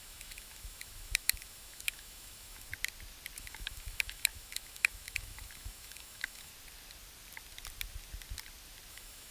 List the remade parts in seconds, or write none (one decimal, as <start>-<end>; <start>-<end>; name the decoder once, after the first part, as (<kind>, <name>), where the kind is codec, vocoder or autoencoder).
0.0-2.7 (autoencoder, DAC-VAE); 3.4-6.5; 8.9-9.3

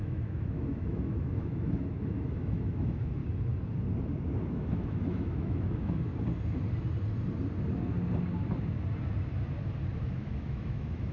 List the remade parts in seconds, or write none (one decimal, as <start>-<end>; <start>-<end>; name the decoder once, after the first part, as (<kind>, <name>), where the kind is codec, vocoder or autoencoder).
0.0-3.2 (autoencoder, DAC-VAE); 4.5-6.1; 10.0-11.1

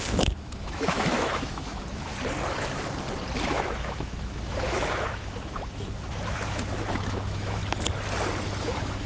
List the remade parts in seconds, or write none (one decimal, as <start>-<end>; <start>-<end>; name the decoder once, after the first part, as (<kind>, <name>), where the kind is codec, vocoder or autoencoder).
0.0-2.1 (autoencoder, DAC-VAE); 3.5-7.6; 8.6-9.1

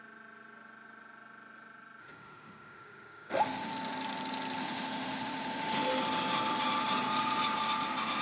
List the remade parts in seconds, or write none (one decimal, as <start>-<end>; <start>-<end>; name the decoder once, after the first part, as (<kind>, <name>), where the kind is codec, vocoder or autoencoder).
2.0-3.7 (autoencoder, DAC-VAE); 4.6-6.0

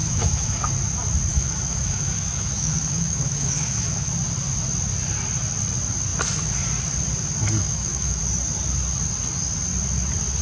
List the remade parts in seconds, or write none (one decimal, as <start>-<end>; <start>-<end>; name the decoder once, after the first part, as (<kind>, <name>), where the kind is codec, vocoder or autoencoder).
0.0-0.6 (autoencoder, DAC-VAE); 1.3-4.1; 7.6-8.2

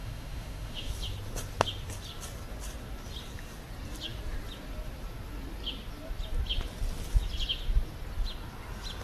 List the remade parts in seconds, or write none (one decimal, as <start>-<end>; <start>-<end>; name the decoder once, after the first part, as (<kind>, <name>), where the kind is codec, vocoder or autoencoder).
0.0-0.9 (autoencoder, DAC-VAE)